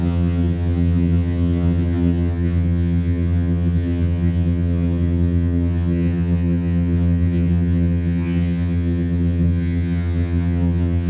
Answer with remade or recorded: remade